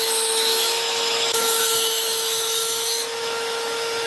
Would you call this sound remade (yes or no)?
yes